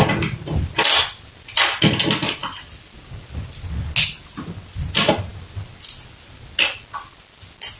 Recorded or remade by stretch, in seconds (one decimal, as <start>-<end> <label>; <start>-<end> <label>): 0.0-7.8 recorded